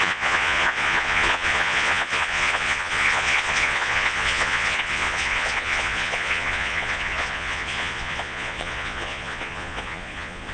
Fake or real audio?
fake